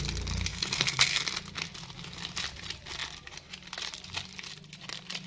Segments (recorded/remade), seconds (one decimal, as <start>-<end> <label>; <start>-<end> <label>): 0.0-0.5 recorded; 0.5-1.2 remade; 1.2-5.3 recorded